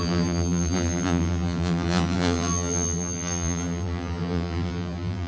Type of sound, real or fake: fake